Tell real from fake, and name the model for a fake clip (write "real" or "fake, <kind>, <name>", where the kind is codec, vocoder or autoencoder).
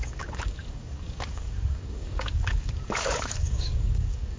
fake, codec, DAC